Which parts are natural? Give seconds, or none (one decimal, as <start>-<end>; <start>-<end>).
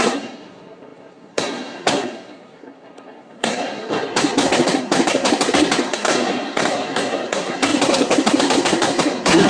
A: none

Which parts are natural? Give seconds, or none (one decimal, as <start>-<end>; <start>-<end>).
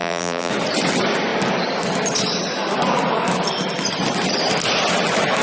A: 0.5-5.4